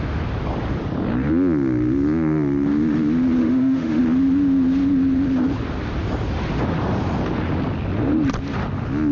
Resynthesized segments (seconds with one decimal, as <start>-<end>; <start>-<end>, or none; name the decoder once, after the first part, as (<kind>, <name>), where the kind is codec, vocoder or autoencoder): 3.4-4.0 (autoencoder, DAC-VAE)

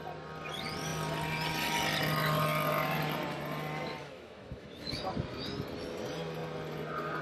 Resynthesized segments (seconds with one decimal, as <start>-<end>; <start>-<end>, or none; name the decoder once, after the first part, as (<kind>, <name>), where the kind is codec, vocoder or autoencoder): 4.0-5.0 (autoencoder, DAC-VAE)

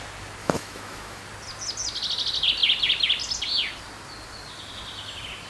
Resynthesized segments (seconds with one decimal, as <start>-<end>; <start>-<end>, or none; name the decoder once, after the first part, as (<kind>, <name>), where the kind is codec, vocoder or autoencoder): 0.4-1.2 (autoencoder, DAC-VAE)

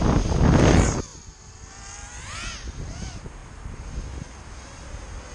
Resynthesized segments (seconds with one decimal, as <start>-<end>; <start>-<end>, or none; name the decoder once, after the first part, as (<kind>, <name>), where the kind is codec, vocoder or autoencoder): none

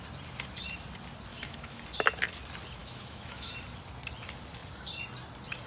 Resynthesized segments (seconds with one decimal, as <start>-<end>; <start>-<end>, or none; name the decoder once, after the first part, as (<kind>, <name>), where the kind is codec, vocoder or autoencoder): 1.3-1.8 (autoencoder, DAC-VAE); 2.8-3.5

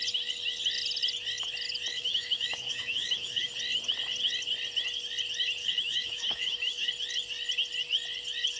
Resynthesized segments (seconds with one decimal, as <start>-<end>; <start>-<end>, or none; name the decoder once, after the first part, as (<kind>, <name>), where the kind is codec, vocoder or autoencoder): 1.9-3.5 (autoencoder, DAC-VAE); 5.6-6.9

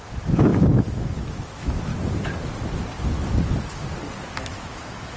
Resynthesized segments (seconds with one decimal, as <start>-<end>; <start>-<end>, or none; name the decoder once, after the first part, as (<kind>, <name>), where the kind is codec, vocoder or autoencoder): 0.0-1.9 (autoencoder, DAC-VAE); 4.4-5.2

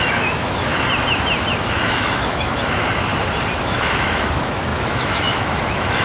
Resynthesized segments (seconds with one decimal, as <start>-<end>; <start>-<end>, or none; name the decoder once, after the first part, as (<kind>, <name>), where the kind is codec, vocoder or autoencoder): 0.0-0.7 (autoencoder, DAC-VAE); 1.6-3.1; 3.6-6.0